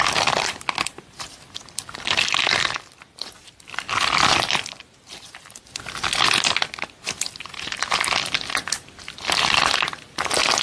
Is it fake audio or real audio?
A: real